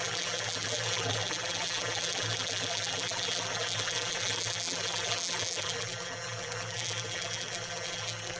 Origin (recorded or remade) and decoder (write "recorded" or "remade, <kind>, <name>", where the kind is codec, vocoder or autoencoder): remade, vocoder, BigVGAN v2